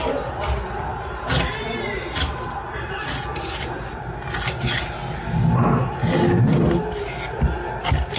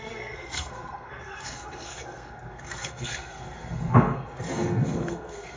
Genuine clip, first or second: first